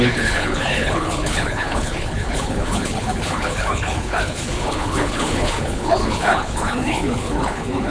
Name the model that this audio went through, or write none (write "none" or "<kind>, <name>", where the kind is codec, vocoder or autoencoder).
codec, HILCodec